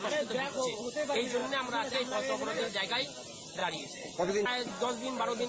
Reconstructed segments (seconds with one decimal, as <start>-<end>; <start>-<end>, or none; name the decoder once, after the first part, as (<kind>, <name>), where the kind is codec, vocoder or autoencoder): 3.6-4.3 (vocoder, Vocos)